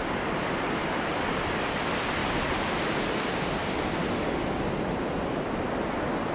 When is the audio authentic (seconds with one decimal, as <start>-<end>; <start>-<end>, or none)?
0.0-6.3

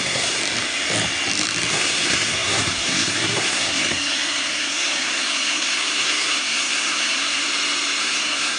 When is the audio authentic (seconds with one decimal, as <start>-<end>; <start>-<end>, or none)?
0.4-1.7; 7.4-8.0